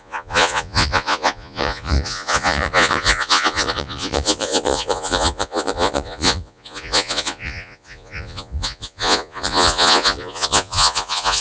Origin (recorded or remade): remade